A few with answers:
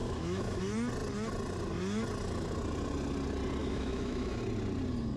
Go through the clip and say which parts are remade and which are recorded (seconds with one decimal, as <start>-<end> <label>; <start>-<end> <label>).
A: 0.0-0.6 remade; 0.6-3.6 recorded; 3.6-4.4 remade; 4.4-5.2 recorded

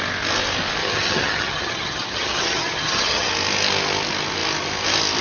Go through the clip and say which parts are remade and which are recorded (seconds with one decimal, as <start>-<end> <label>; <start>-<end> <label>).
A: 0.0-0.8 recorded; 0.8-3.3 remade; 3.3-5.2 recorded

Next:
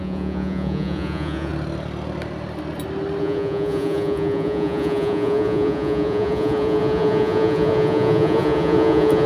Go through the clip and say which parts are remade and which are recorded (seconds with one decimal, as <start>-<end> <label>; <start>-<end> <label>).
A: 0.0-1.5 remade; 1.5-3.2 recorded; 3.2-9.3 remade